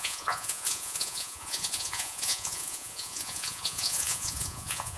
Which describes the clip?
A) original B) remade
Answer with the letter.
B